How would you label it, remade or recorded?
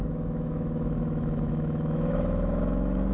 remade